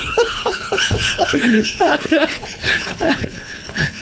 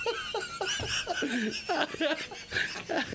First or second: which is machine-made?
first